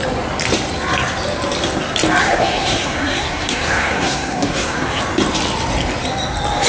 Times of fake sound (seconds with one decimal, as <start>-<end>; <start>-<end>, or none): 2.2-5.0